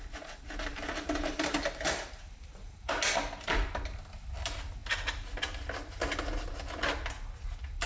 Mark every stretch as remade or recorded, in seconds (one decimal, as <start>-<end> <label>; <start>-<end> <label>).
0.0-0.7 recorded; 0.7-2.9 remade; 2.9-7.9 recorded